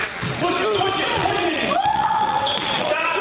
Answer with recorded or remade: remade